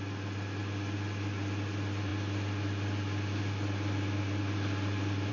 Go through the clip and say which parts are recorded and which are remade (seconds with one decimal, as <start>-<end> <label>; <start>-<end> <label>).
0.0-5.3 recorded